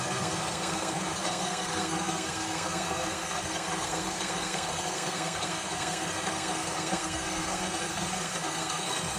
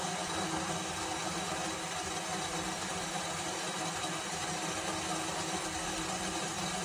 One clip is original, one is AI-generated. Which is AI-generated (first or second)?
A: first